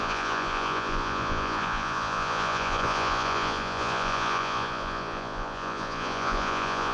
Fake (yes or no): yes